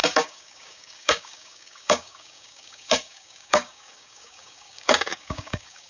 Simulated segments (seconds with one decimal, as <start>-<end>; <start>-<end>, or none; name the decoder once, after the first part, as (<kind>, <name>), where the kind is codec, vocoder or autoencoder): 0.0-5.9 (codec, DAC)

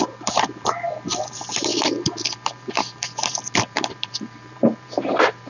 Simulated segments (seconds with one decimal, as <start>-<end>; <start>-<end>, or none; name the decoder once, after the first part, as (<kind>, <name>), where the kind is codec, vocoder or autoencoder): 0.0-5.5 (vocoder, BigVGAN v2)

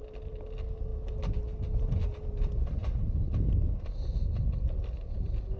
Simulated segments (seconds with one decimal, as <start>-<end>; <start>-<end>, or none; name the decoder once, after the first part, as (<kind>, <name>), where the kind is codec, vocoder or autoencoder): none